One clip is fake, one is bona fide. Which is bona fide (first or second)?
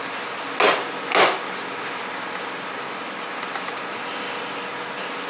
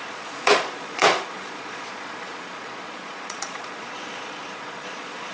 first